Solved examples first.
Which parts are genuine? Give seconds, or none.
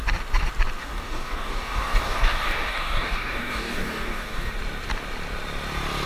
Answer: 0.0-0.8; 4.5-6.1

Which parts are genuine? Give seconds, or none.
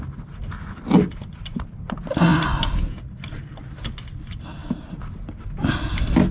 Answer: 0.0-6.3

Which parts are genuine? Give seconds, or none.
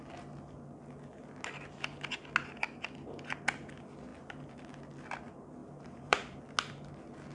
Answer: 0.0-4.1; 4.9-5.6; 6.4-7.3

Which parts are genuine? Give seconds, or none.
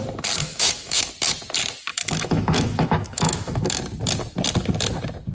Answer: 0.0-0.4; 1.1-1.9; 3.8-5.3